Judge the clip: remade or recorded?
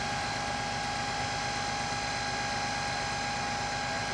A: recorded